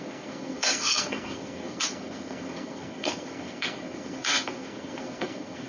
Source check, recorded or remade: remade